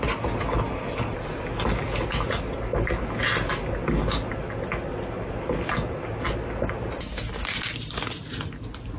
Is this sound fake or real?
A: real